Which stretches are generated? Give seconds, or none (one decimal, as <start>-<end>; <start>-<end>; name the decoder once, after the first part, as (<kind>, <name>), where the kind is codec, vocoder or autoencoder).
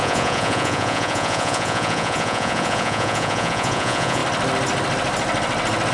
0.0-4.2 (vocoder, Vocos)